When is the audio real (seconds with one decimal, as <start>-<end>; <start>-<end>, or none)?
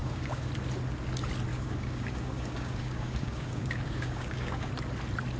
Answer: 0.5-1.5; 4.7-5.4